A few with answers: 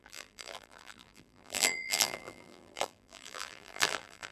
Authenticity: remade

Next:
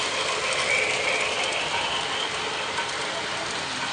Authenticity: remade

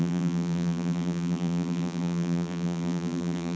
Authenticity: remade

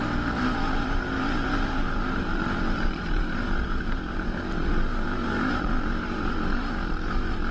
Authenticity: remade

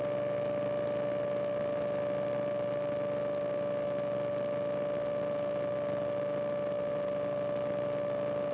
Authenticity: recorded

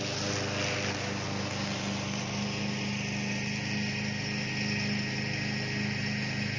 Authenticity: recorded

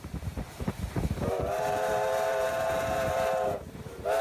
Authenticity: remade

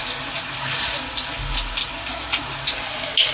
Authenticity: recorded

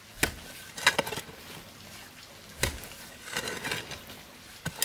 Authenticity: recorded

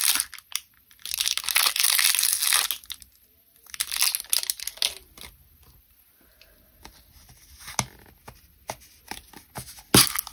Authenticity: recorded